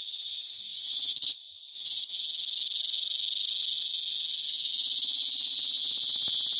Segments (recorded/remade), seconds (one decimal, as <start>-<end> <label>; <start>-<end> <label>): 0.0-6.6 recorded